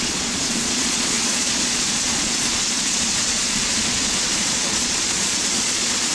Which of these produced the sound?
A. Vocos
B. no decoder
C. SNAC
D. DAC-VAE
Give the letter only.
A